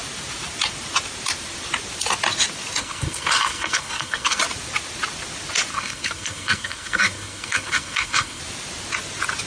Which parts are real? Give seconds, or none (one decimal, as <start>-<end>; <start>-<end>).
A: 0.0-2.8; 4.4-5.7; 8.4-9.5